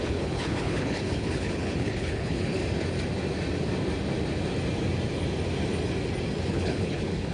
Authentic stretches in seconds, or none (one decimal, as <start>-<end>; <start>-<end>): 2.6-6.5